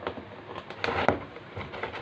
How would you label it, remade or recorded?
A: recorded